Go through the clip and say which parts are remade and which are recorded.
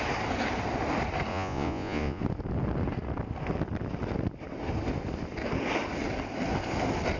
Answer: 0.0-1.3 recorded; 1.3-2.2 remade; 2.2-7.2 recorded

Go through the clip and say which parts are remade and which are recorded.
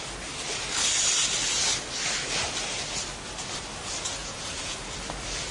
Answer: 0.0-4.2 recorded; 4.2-4.9 remade; 4.9-5.5 recorded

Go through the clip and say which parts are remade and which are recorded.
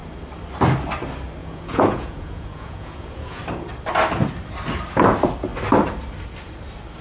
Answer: 0.0-1.4 recorded; 1.4-3.4 remade; 3.4-7.0 recorded